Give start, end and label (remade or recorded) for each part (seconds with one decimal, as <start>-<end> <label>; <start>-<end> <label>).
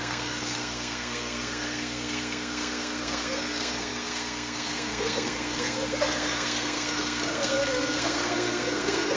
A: 0.0-9.2 remade